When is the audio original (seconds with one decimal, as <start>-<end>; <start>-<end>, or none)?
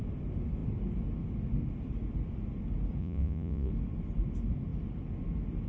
0.0-3.0; 3.7-5.7